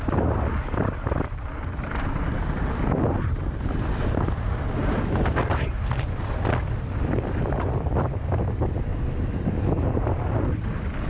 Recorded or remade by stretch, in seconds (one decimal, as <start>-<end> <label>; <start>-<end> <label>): 0.0-8.9 remade; 8.9-10.2 recorded; 10.2-11.1 remade